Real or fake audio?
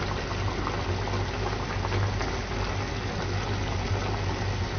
real